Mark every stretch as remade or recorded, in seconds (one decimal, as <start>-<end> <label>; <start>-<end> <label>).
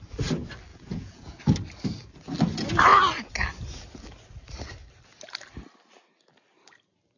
0.0-0.7 recorded; 0.7-1.4 remade; 1.4-7.2 recorded